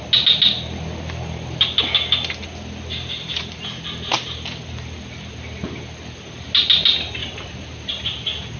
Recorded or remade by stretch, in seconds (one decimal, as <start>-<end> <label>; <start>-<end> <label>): 0.0-7.2 recorded; 7.2-7.9 remade; 7.9-8.6 recorded